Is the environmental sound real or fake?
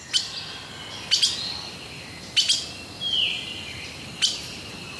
real